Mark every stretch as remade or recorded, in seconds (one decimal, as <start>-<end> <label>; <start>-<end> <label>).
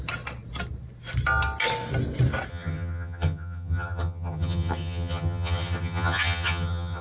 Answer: 0.0-2.5 recorded; 2.5-7.0 remade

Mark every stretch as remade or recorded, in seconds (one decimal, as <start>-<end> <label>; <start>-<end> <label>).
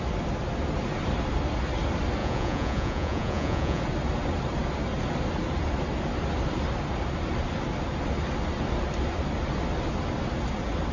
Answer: 0.0-2.2 recorded; 2.2-3.8 remade; 3.8-10.9 recorded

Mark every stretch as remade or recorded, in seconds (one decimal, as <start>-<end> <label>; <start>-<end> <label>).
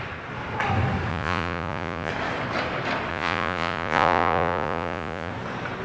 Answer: 0.0-1.1 recorded; 1.1-2.1 remade; 2.1-3.1 recorded; 3.1-5.3 remade; 5.3-5.8 recorded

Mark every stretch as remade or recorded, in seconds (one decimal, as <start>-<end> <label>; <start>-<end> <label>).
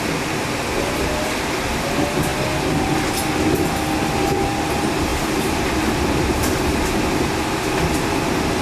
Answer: 0.0-8.6 recorded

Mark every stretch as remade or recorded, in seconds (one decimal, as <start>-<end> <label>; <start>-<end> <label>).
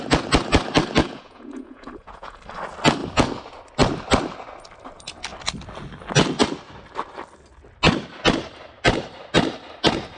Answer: 0.0-1.0 recorded; 1.0-2.4 remade; 2.4-10.2 recorded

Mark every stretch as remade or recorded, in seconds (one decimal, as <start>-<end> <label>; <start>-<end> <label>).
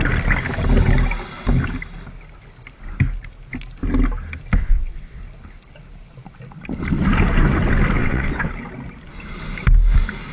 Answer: 0.0-4.6 recorded; 4.6-5.2 remade; 5.2-8.0 recorded; 8.0-8.5 remade; 8.5-10.3 recorded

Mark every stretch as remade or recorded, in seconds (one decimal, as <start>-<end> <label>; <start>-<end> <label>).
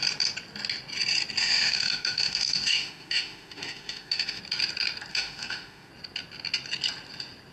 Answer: 0.0-1.4 recorded; 1.4-4.4 remade; 4.4-5.1 recorded; 5.1-5.9 remade; 5.9-7.5 recorded